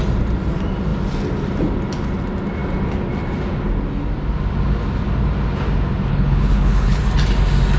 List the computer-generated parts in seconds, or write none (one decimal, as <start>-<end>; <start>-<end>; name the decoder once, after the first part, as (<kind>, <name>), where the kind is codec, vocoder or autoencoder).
6.1-7.0 (codec, HILCodec)